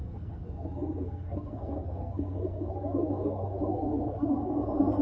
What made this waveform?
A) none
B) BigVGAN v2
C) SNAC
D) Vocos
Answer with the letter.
C